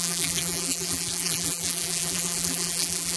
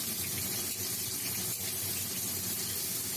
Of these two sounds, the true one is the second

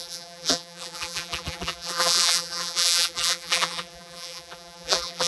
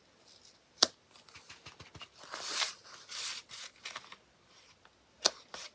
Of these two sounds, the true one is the second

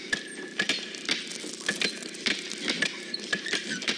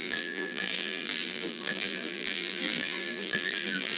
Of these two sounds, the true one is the first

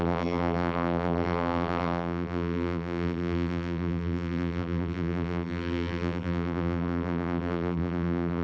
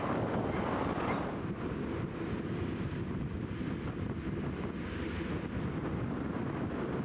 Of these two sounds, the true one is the second